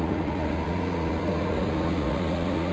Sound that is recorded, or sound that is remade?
remade